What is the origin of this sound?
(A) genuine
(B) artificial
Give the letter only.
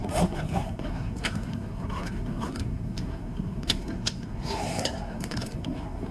B